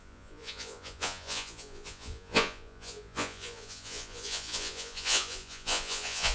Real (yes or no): no